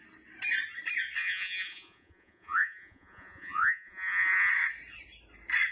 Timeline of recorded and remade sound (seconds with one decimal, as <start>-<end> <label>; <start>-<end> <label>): 0.0-1.2 recorded; 1.2-4.5 remade; 4.5-5.7 recorded